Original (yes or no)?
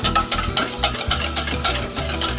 yes